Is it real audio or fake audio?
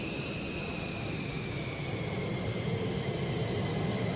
real